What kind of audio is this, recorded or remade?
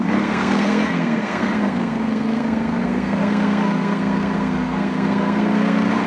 remade